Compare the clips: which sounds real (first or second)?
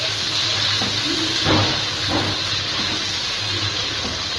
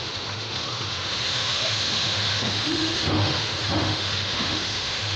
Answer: first